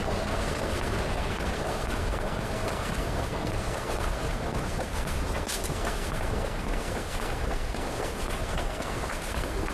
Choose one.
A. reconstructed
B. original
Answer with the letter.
A